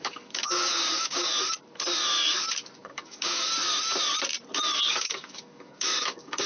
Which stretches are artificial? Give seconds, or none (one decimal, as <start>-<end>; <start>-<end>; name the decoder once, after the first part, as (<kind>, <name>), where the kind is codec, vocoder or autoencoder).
0.0-1.3 (codec, DAC); 2.8-3.5; 4.9-6.5